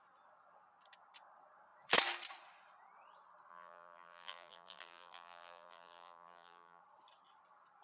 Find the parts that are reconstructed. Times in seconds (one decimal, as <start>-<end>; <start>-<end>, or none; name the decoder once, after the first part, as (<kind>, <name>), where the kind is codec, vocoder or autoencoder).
3.5-6.8 (vocoder, BigVGAN v2)